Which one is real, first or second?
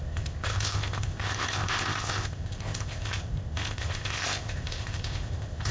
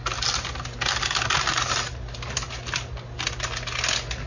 second